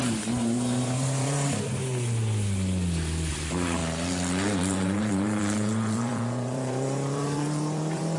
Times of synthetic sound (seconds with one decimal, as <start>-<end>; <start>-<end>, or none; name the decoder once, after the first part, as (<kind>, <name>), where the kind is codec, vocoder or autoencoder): 0.0-1.9 (vocoder, BigVGAN v2); 3.3-3.8; 4.6-8.2

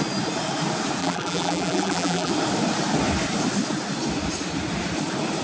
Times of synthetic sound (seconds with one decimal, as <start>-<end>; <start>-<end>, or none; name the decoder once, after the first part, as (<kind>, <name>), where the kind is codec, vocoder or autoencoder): 1.0-2.3 (vocoder, BigVGAN v2)

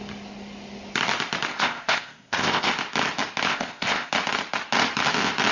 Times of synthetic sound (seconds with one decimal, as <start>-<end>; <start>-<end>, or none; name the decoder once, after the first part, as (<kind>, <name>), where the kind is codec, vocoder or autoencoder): 1.5-2.7 (codec, ZipCodec); 3.5-4.1

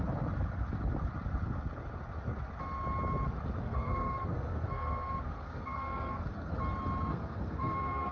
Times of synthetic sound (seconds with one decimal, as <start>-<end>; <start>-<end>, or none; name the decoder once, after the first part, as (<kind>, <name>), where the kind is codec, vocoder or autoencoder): 3.6-6.5 (codec, SNAC); 7.1-8.1

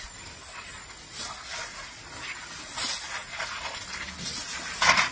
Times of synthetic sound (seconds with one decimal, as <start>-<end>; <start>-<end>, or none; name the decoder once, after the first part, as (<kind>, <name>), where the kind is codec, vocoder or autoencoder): none